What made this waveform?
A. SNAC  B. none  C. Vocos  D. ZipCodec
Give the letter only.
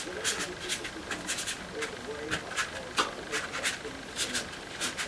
B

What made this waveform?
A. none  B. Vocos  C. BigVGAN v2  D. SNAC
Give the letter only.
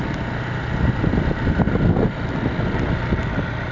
A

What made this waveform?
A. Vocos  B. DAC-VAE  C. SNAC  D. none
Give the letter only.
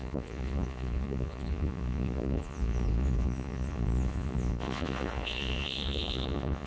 A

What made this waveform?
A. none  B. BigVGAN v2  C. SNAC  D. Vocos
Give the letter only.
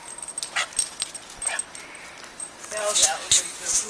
A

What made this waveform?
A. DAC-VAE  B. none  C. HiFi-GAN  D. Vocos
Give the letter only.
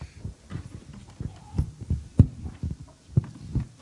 B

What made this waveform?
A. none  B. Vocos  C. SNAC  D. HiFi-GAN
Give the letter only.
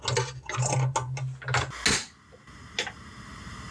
A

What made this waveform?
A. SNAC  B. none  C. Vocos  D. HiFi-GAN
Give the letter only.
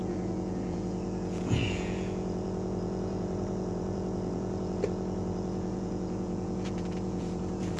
C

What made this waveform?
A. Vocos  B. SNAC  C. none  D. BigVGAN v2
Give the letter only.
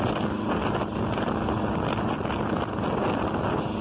C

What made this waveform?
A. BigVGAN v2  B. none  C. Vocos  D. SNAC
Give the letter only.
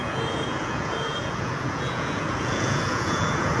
C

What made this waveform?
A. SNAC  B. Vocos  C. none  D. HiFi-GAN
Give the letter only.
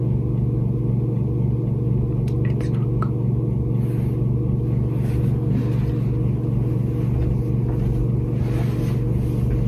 C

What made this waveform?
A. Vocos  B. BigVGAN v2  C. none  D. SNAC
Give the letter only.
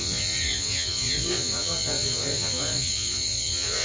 A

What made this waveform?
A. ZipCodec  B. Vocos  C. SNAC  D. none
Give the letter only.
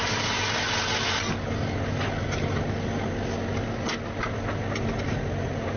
D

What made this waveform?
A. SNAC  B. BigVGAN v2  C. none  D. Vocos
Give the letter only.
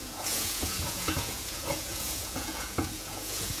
D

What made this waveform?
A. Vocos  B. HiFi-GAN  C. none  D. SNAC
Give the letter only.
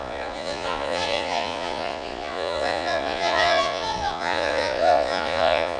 A